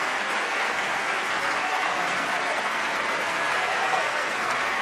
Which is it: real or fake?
fake